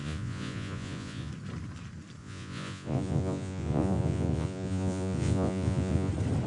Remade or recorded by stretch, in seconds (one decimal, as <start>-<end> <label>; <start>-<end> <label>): 0.0-1.3 remade; 1.3-2.2 recorded; 2.2-6.1 remade; 6.1-6.5 recorded